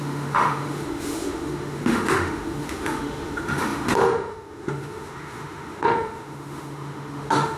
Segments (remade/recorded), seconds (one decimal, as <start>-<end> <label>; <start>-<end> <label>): 0.0-7.6 remade